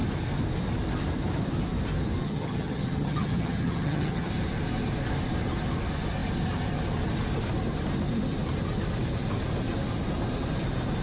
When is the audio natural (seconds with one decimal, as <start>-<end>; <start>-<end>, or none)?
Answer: 0.0-2.2; 4.3-11.0